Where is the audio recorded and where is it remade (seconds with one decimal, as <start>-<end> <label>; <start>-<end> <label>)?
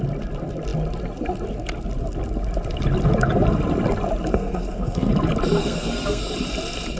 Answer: 0.0-4.3 recorded; 4.3-5.1 remade; 5.1-5.6 recorded; 5.6-6.2 remade; 6.2-7.0 recorded